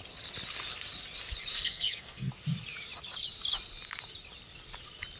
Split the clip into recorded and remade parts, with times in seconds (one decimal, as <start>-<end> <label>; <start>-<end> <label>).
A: 0.0-1.5 recorded; 1.5-2.3 remade; 2.3-5.2 recorded